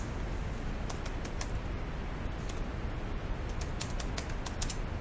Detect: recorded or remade recorded